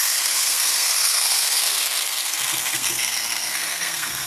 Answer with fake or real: fake